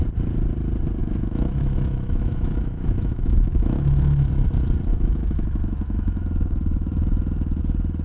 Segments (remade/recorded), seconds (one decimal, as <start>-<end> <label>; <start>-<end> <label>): 0.0-1.0 recorded; 1.0-4.3 remade; 4.3-4.9 recorded; 4.9-7.6 remade; 7.6-8.0 recorded